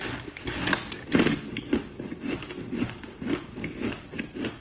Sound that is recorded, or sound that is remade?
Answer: recorded